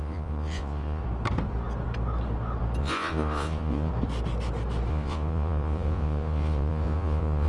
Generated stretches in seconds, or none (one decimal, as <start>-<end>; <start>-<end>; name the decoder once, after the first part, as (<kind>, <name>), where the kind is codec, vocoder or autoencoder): 0.0-1.0 (vocoder, Vocos); 2.8-3.9; 4.9-7.5